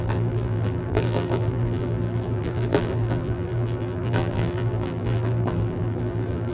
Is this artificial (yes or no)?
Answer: yes